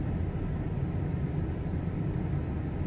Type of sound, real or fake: real